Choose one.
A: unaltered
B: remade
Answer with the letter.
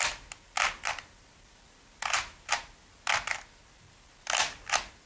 A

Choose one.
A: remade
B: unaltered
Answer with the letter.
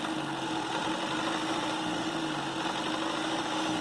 B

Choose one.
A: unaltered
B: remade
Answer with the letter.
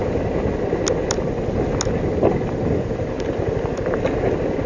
A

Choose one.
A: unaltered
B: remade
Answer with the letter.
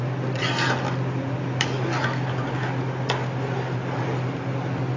A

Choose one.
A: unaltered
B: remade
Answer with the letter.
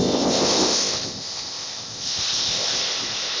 B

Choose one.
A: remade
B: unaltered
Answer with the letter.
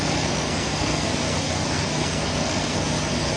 A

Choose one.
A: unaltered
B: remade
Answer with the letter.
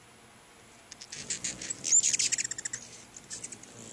A